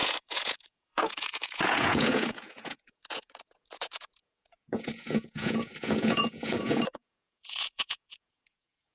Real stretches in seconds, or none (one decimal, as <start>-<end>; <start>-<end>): none